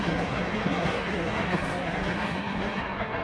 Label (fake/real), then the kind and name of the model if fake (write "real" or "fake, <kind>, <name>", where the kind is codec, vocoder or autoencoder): fake, codec, SNAC